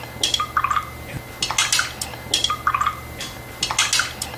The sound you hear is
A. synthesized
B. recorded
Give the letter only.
B